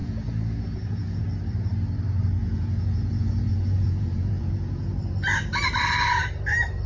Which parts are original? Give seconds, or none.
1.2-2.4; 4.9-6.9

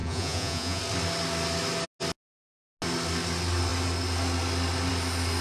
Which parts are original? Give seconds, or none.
0.8-5.4

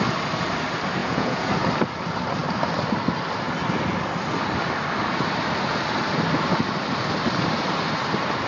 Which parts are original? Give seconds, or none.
0.0-1.0; 1.5-8.5

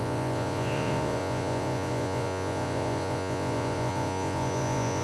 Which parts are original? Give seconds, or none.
none